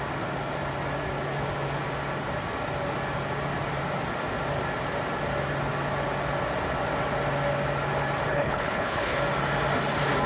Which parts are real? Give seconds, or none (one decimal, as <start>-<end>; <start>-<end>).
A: 0.0-8.3; 9.2-10.3